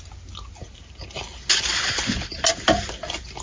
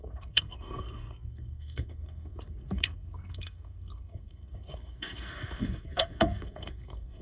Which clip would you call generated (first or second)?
second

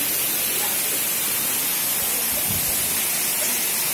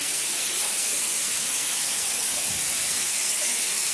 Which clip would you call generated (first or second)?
second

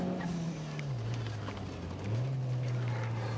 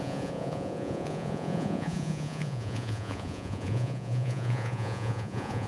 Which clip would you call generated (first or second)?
second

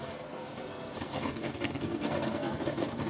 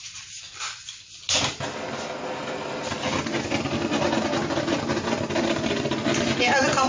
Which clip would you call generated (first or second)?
first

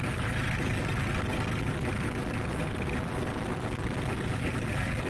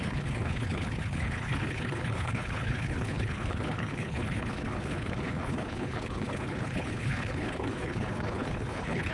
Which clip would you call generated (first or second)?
second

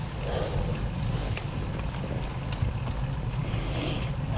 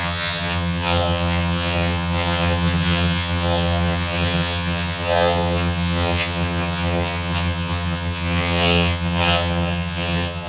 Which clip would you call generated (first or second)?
second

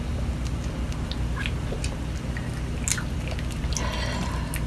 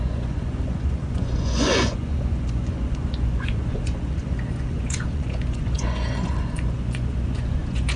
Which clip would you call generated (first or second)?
second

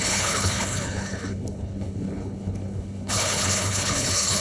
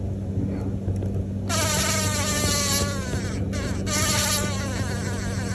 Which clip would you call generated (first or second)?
first